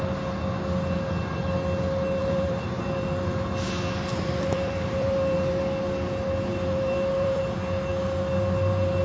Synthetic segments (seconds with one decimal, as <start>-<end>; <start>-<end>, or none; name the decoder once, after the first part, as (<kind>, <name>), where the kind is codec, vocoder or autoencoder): 2.2-3.4 (vocoder, BigVGAN v2); 4.1-5.6; 6.5-7.4